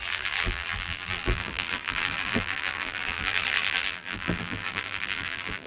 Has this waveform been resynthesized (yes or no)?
yes